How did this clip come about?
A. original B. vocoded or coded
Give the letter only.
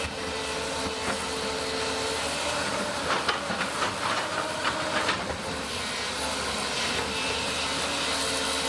A